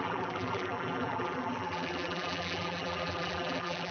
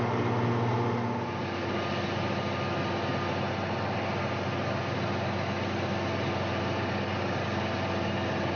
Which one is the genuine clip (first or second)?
second